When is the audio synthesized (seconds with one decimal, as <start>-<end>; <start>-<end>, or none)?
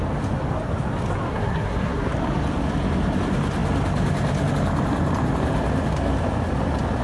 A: 1.3-2.1